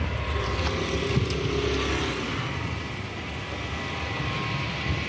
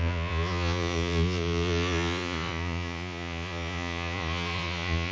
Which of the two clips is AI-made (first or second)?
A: second